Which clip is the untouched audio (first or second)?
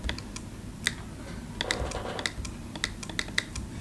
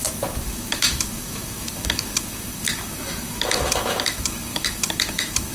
first